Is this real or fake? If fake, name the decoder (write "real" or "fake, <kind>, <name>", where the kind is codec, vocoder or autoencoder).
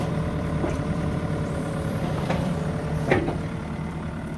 fake, vocoder, BigVGAN v2